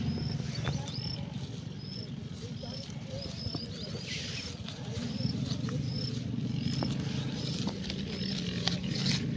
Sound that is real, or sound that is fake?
real